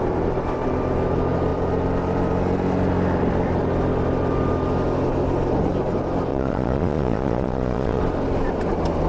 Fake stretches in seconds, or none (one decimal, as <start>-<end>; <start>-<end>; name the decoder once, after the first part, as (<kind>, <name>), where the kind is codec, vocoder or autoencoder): 6.3-8.0 (vocoder, Vocos)